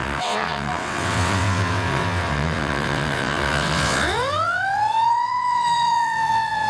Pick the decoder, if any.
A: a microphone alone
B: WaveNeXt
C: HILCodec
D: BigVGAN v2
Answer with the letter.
B